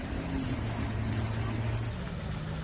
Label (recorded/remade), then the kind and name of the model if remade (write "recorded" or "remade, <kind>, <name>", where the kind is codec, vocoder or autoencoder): recorded